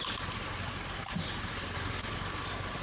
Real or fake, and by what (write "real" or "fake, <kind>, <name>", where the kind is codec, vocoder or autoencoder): real